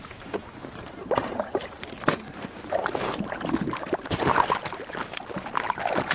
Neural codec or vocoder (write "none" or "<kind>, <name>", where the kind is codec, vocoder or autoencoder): vocoder, BigVGAN v2